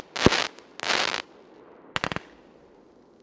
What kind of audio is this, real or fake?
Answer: real